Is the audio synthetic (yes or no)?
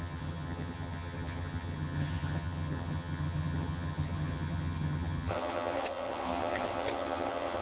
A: yes